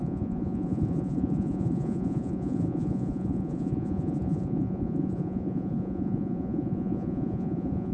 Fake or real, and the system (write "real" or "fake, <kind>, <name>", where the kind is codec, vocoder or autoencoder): fake, vocoder, Vocos